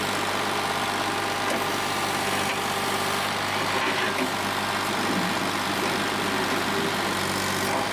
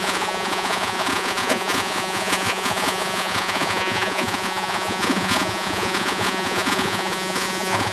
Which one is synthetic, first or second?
second